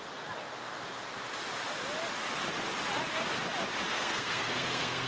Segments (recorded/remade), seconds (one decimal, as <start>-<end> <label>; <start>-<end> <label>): 0.0-3.9 recorded; 3.9-5.1 remade